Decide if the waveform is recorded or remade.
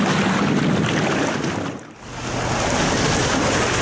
recorded